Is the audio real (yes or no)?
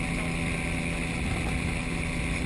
yes